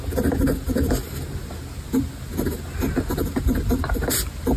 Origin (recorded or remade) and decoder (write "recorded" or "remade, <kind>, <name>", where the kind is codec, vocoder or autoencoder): recorded